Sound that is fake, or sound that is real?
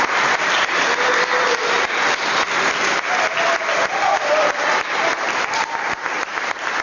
real